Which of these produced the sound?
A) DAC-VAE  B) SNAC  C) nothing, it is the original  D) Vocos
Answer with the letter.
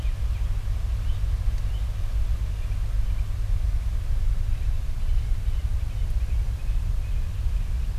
C